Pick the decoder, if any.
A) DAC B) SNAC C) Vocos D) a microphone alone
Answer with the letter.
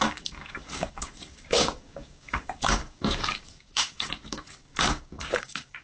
A